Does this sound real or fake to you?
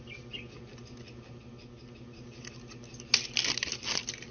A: real